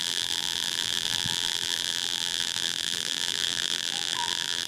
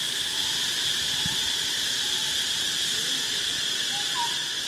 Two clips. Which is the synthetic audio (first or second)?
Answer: first